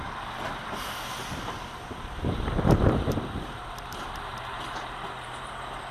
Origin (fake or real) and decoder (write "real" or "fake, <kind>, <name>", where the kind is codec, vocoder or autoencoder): fake, vocoder, BigVGAN v2